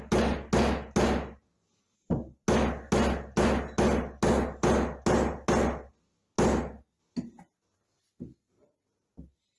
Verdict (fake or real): real